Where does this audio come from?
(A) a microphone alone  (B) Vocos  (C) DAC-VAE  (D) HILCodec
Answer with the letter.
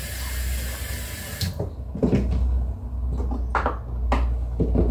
A